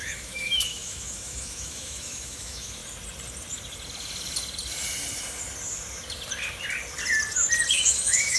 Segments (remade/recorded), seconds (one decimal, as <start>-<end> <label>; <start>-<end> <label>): 0.0-2.8 remade; 2.8-7.7 recorded; 7.7-8.4 remade